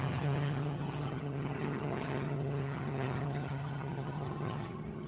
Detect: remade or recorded remade